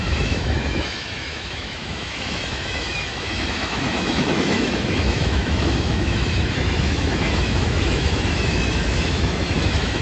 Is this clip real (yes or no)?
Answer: no